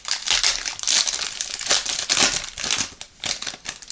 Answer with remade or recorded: recorded